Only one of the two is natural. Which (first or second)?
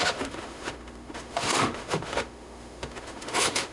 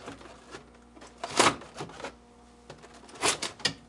second